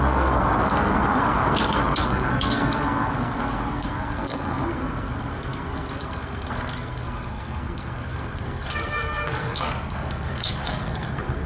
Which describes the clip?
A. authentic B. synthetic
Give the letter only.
B